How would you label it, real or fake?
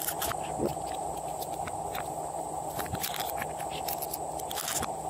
real